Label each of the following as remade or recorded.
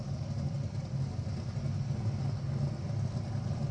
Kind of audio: recorded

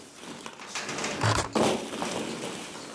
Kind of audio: recorded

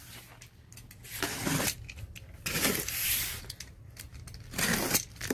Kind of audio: recorded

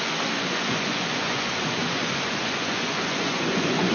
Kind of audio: remade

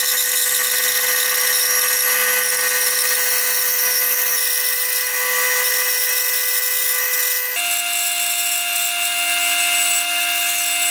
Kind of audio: recorded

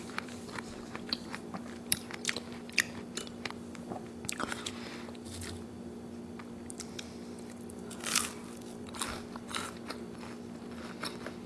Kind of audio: remade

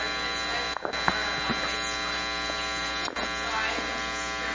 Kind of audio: recorded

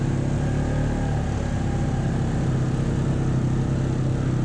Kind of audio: recorded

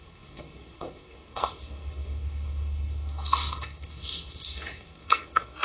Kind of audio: remade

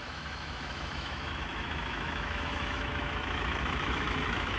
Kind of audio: remade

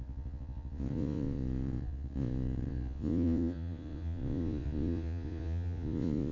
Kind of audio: remade